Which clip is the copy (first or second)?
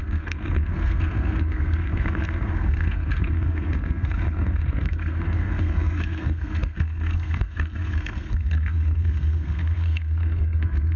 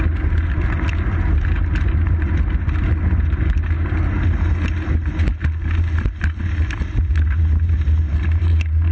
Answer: first